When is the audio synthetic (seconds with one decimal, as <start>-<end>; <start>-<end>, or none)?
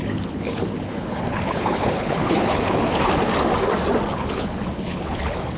0.0-3.1; 4.1-5.6